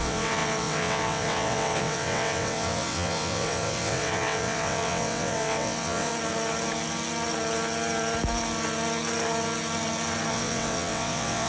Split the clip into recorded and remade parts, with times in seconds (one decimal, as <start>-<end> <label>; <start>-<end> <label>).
0.0-6.1 remade; 6.1-10.3 recorded; 10.3-11.5 remade